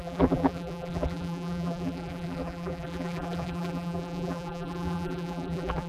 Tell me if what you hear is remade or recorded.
remade